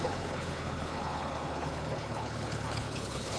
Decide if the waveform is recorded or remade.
remade